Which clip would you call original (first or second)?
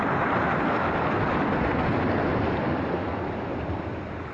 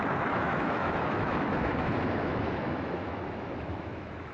first